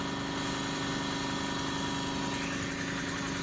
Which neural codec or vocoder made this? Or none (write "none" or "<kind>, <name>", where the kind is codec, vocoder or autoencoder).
none